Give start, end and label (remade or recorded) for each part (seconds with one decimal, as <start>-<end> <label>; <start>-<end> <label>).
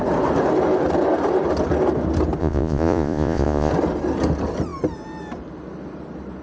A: 0.0-2.4 recorded; 2.4-3.7 remade; 3.7-6.4 recorded